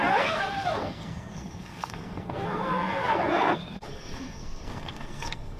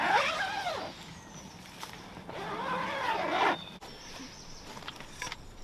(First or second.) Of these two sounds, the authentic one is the second